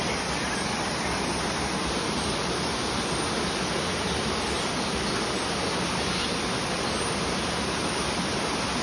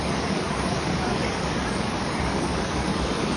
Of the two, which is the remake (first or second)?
second